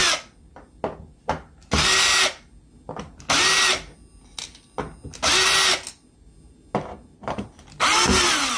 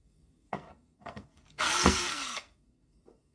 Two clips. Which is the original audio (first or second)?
first